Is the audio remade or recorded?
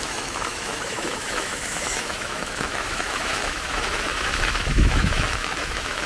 remade